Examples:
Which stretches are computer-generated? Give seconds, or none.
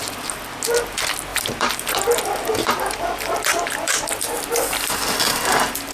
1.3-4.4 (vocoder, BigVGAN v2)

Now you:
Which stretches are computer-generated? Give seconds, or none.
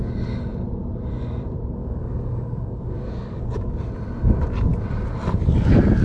1.8-3.8 (codec, DAC)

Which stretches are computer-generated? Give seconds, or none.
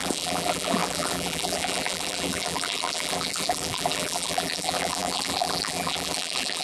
0.0-6.6 (vocoder, BigVGAN v2)